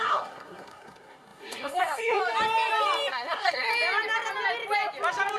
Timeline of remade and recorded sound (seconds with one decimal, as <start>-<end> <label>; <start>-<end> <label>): 0.0-2.2 remade; 2.2-3.1 recorded; 3.1-3.7 remade; 3.7-5.4 recorded